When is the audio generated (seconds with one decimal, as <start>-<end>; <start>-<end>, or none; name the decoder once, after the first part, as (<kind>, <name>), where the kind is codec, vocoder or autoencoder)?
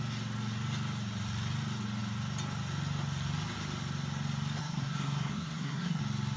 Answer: 4.6-6.0 (codec, SNAC)